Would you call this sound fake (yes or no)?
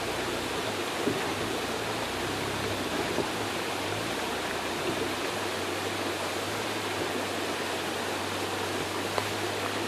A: no